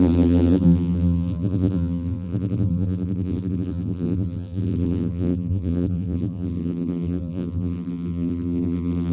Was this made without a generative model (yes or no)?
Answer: no